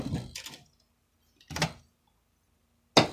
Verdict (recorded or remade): recorded